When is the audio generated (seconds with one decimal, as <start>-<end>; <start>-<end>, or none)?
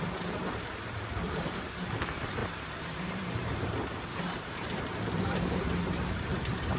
0.0-6.8